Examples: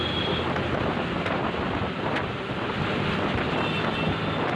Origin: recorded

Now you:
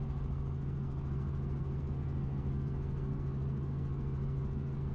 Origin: remade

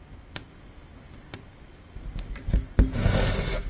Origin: recorded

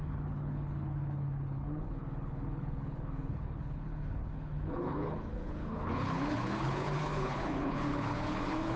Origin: remade